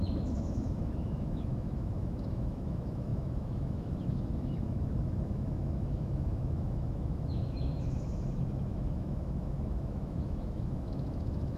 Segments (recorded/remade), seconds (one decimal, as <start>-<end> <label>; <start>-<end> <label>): 0.0-11.6 remade